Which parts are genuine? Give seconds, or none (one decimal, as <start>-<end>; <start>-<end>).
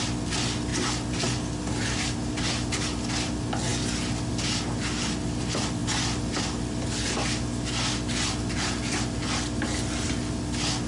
0.0-10.9